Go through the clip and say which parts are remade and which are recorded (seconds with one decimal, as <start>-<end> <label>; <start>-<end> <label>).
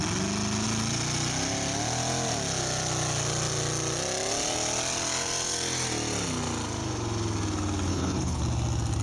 0.0-7.9 recorded; 7.9-8.4 remade; 8.4-9.0 recorded